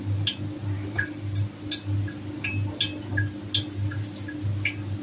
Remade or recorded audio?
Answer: recorded